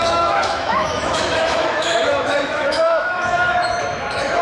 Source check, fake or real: fake